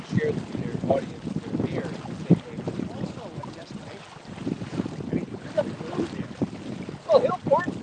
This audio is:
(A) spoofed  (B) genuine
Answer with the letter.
B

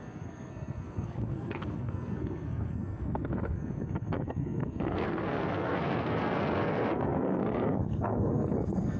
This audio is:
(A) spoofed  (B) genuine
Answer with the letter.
A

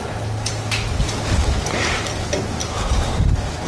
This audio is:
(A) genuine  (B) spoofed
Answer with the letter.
A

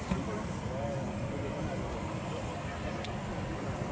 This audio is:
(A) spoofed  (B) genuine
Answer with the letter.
B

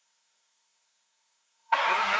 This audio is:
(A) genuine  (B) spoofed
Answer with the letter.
B